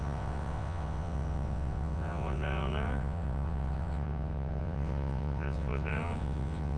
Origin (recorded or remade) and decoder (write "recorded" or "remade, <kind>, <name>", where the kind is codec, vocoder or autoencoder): remade, vocoder, WaveNeXt